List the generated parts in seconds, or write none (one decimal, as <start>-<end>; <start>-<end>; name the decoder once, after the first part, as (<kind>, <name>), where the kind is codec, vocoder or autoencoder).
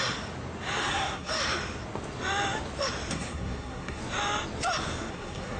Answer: 0.8-1.3 (codec, SNAC); 3.1-4.0; 5.1-5.6